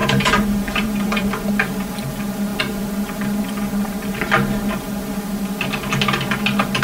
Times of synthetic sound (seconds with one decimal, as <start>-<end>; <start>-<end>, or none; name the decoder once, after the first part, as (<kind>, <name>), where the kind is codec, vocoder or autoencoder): 0.0-1.3 (vocoder, BigVGAN v2)